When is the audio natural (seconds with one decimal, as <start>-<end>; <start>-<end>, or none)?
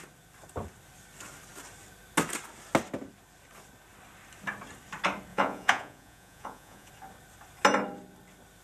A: 0.0-5.3; 6.9-8.6